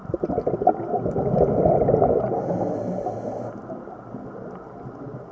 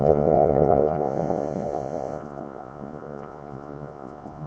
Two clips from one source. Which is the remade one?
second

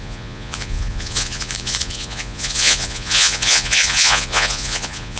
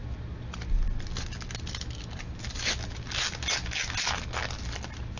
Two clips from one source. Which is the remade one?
first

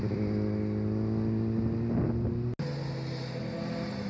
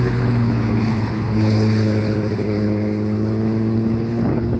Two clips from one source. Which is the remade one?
second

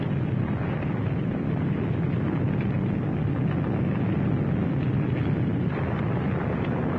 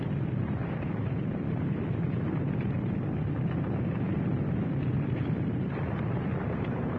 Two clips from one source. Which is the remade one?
second